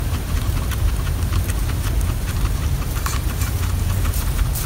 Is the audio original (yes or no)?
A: no